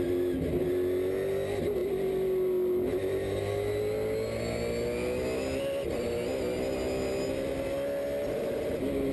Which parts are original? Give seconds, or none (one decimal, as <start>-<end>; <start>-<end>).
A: 0.0-9.1